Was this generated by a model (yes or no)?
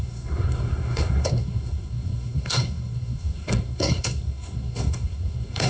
yes